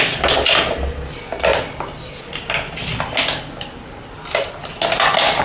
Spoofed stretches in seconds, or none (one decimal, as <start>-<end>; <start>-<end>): none